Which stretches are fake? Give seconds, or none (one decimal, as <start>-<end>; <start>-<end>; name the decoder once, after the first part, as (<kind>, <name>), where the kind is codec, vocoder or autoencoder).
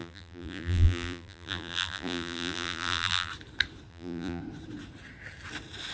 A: 0.0-3.3 (vocoder, BigVGAN v2); 3.9-4.4